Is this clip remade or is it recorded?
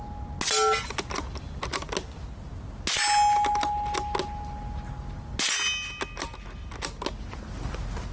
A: recorded